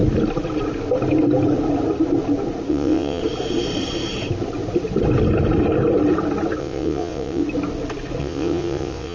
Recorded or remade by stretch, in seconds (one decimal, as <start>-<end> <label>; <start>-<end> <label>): 0.0-2.7 recorded; 2.7-3.2 remade; 3.2-6.6 recorded; 6.6-7.4 remade; 7.4-8.2 recorded; 8.2-9.1 remade